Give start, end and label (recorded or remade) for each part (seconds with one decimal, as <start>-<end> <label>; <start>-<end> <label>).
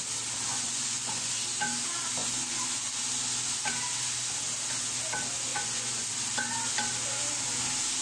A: 0.0-0.5 recorded; 0.5-1.3 remade; 1.3-2.2 recorded; 2.2-3.0 remade; 3.0-5.5 recorded; 5.5-6.1 remade; 6.1-8.0 recorded